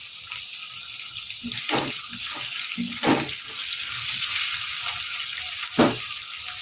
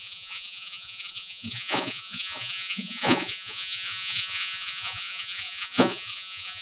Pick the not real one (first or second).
second